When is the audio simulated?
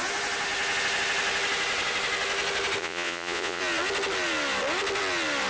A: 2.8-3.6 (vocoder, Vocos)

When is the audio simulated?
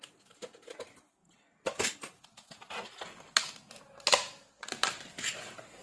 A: none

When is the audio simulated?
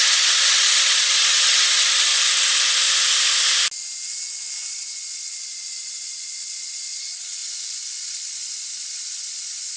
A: 0.0-2.1 (vocoder, Vocos); 4.7-7.4; 8.1-9.8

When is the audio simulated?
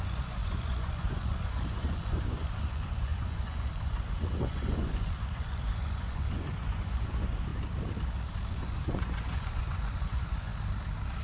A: 0.0-7.5 (vocoder, Vocos); 8.5-10.5